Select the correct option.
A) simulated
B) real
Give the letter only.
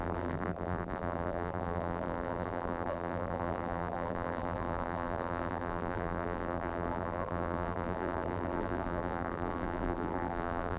A